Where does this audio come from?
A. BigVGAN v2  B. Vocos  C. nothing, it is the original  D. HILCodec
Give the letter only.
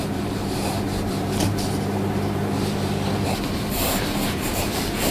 A